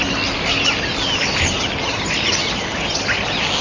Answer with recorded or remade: recorded